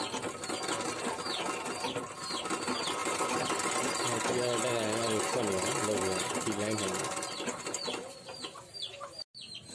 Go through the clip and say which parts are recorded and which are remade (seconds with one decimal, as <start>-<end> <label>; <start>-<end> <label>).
0.0-3.0 recorded; 3.0-3.9 remade; 3.9-9.7 recorded